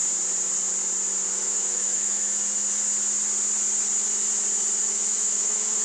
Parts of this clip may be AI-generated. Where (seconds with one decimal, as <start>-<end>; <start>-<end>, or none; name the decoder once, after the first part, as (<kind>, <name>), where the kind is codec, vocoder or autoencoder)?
1.3-2.2 (autoencoder, DAC-VAE); 4.8-5.8